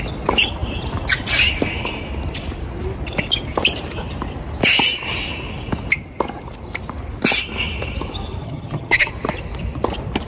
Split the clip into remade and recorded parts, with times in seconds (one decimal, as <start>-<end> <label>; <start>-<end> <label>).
0.0-8.4 recorded; 8.4-9.1 remade; 9.1-10.3 recorded

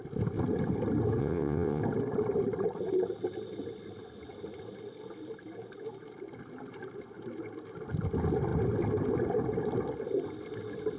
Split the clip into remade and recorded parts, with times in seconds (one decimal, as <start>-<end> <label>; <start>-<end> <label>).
0.0-1.2 recorded; 1.2-1.8 remade; 1.8-11.0 recorded

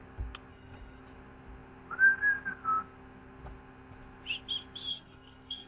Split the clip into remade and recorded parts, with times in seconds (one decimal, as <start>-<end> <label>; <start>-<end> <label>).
0.0-0.5 recorded; 0.5-1.0 remade; 1.0-4.9 recorded; 4.9-5.7 remade

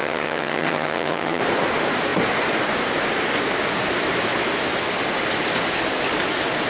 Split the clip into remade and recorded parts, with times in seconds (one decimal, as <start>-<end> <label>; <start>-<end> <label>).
0.0-1.4 remade; 1.4-6.7 recorded

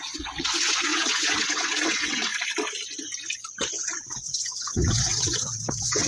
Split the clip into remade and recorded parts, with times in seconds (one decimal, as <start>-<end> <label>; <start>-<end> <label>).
0.0-2.3 remade; 2.3-4.0 recorded; 4.0-6.1 remade

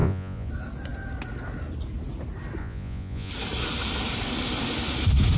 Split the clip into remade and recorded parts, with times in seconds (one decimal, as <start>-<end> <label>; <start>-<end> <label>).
0.0-0.5 remade; 0.5-2.6 recorded; 2.6-3.3 remade; 3.3-5.4 recorded

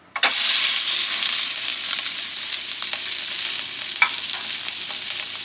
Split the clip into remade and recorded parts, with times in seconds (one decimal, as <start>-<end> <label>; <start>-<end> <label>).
0.0-5.4 recorded

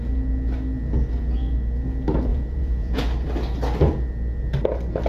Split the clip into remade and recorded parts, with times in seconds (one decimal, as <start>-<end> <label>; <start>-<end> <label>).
0.0-2.3 recorded; 2.3-3.0 remade; 3.0-5.1 recorded